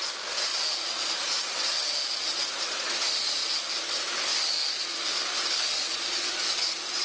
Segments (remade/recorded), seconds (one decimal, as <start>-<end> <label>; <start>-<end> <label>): 0.0-7.0 recorded